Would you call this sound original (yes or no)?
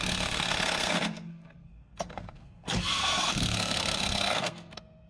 no